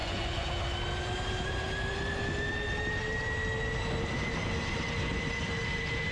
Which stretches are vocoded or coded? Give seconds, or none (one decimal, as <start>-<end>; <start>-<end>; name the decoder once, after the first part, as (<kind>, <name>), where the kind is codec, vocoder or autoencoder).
0.0-0.5 (vocoder, Vocos)